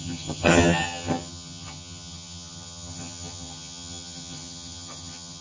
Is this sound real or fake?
fake